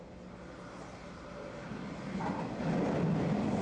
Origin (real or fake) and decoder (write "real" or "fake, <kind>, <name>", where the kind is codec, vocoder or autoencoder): real